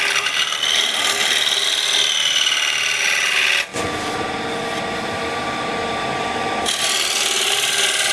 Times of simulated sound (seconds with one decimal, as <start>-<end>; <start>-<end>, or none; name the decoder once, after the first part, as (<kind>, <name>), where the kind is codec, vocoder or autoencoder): none